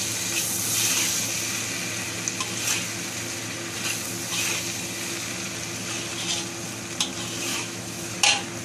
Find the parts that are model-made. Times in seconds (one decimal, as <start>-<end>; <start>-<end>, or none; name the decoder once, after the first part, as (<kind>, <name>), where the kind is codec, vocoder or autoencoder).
7.5-8.1 (autoencoder, DAC-VAE)